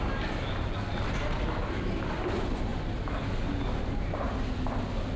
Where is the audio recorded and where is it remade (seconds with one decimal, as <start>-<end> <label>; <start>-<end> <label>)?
0.0-5.2 recorded